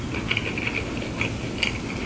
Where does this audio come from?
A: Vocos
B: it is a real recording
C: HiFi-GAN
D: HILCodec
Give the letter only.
B